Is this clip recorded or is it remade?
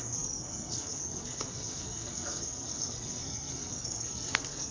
remade